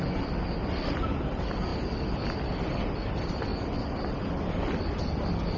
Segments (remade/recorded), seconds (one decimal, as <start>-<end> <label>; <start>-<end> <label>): 0.0-5.6 recorded